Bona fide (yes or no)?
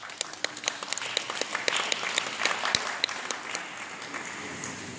yes